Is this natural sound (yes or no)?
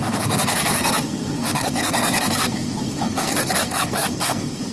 no